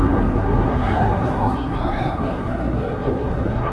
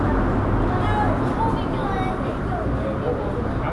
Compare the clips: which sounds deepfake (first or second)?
first